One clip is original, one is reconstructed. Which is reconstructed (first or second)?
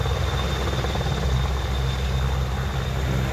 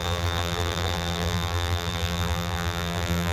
second